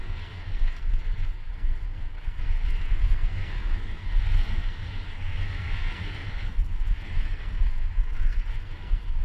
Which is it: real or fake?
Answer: fake